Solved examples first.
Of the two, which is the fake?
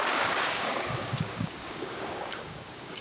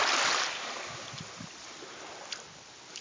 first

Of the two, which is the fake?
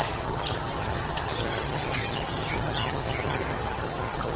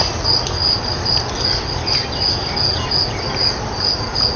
first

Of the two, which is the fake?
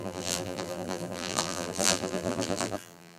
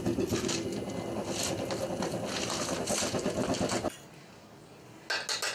first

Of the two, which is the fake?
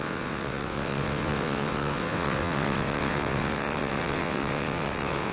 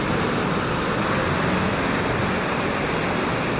first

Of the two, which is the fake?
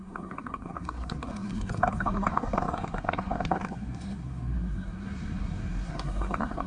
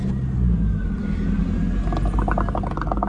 first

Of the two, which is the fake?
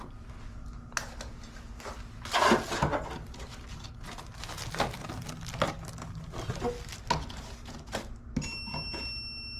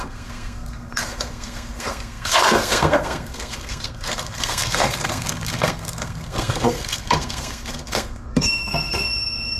second